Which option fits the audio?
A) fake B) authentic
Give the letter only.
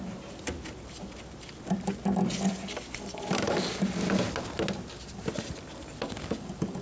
B